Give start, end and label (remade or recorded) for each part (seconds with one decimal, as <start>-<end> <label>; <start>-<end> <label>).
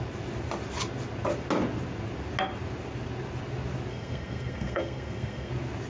0.0-3.9 recorded; 3.9-5.5 remade; 5.5-5.9 recorded